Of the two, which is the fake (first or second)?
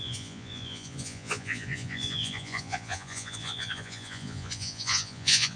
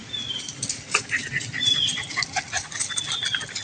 first